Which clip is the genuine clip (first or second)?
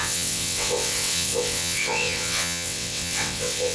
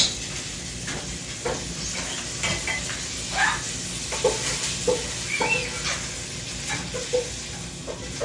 second